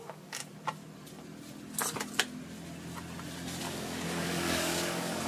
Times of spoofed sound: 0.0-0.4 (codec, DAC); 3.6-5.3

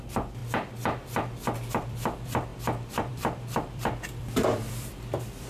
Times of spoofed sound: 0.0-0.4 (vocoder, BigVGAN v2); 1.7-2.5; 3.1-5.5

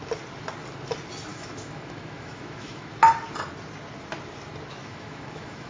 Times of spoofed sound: 1.3-2.9 (autoencoder, DAC-VAE); 4.8-5.7

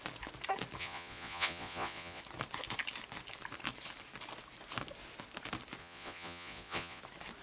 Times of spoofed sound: 0.8-2.2 (vocoder, Vocos); 5.8-7.0